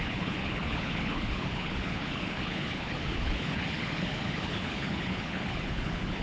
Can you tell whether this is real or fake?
fake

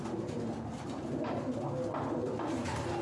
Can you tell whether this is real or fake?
real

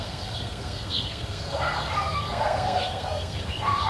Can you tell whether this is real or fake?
fake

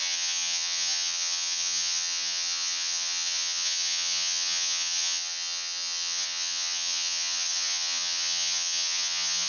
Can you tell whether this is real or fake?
fake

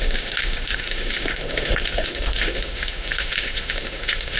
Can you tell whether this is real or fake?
fake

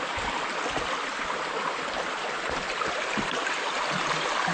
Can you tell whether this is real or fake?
real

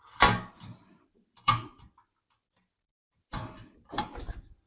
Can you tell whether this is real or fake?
fake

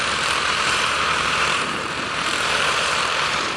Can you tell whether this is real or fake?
fake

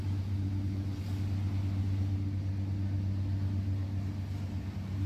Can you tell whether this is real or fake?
real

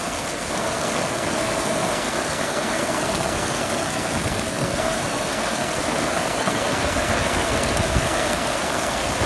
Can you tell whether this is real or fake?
fake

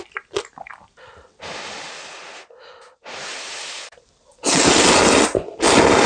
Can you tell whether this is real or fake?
real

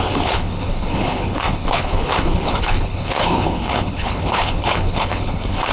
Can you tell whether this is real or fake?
fake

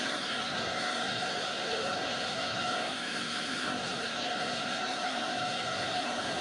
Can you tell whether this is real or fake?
fake